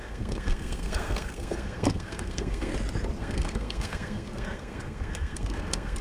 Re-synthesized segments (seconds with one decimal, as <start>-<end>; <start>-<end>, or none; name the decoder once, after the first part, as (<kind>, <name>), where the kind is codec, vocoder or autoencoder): 0.0-2.7 (codec, SNAC); 3.2-6.0

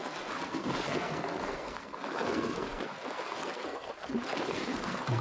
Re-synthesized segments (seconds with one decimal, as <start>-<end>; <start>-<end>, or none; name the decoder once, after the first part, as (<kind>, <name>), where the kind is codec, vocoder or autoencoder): 0.0-5.2 (codec, SNAC)

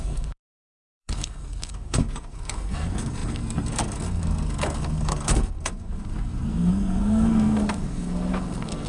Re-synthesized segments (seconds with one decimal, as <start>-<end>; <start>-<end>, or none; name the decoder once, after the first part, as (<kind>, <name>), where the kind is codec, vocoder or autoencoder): 0.0-8.9 (codec, SNAC)

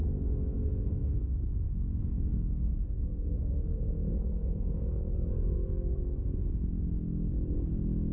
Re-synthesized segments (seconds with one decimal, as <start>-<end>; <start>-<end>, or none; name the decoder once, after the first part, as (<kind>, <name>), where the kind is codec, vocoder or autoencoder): 0.0-1.2 (codec, SNAC); 2.0-6.2

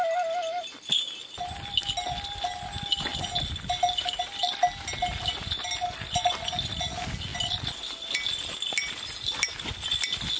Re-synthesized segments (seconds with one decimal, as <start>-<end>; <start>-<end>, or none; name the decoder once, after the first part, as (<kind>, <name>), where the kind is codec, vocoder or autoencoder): none

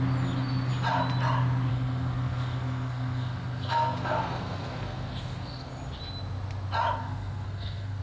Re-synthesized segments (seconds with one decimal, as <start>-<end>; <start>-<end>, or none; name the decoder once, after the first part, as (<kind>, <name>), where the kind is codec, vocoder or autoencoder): 1.7-5.7 (codec, SNAC); 7.0-8.0

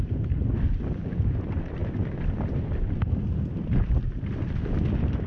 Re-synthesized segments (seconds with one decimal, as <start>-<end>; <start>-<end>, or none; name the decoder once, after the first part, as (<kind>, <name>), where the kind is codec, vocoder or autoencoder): none